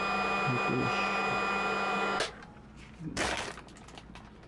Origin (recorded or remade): recorded